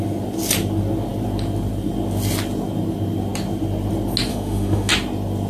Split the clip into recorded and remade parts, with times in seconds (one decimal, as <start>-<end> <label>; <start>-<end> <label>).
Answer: 0.0-4.3 recorded; 4.3-4.9 remade; 4.9-5.5 recorded